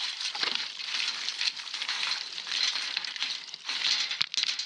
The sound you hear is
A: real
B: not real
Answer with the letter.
A